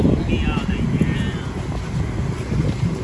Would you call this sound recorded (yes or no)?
yes